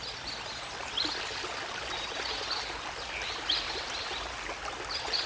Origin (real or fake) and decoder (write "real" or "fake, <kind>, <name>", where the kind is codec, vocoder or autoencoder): real